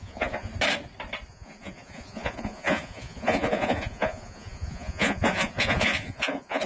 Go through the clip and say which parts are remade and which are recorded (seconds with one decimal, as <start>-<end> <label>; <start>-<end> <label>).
0.0-0.5 remade; 0.5-1.3 recorded; 1.3-6.7 remade